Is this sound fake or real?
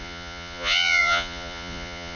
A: fake